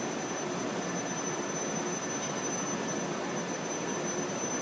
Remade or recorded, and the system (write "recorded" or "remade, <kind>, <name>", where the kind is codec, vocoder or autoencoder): recorded